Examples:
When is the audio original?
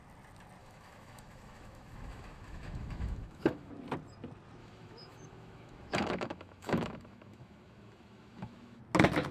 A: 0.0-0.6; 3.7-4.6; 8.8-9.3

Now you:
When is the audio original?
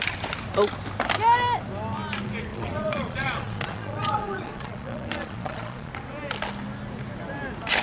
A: 0.0-2.5; 5.9-7.8